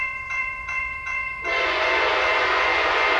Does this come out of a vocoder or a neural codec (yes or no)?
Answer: yes